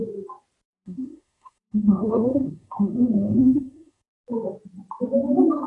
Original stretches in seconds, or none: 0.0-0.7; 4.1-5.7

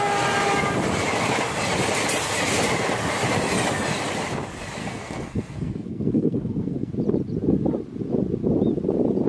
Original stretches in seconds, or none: 0.0-4.8; 6.9-9.3